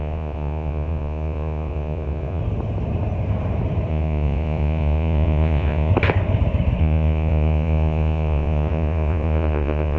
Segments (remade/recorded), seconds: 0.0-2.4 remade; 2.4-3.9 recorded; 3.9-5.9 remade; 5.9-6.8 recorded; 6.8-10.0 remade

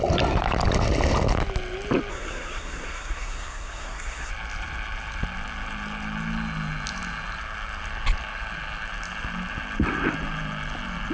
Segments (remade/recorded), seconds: 0.0-2.1 recorded; 2.1-4.3 remade; 4.3-11.1 recorded

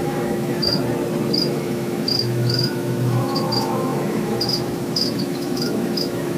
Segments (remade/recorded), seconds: 0.0-0.7 remade; 0.7-1.4 recorded; 1.4-6.4 remade

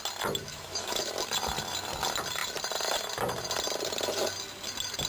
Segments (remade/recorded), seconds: 0.0-0.5 recorded; 0.5-1.1 remade; 1.1-5.1 recorded

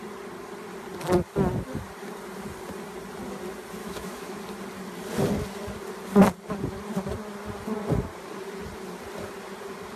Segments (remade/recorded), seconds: 0.0-3.8 recorded; 3.8-4.4 remade; 4.4-10.0 recorded

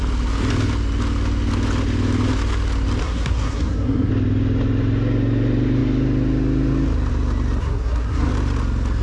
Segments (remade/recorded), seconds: 0.0-3.0 recorded; 3.0-4.1 remade; 4.1-7.6 recorded; 7.6-8.3 remade; 8.3-9.0 recorded